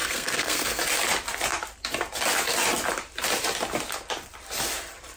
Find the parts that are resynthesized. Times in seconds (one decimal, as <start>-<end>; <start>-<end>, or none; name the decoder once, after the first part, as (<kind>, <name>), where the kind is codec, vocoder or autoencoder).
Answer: 0.0-0.8 (codec, SNAC)